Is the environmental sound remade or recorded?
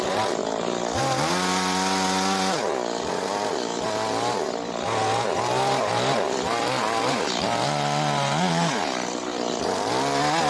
recorded